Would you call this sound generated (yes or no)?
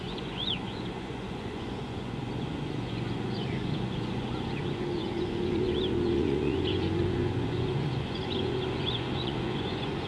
yes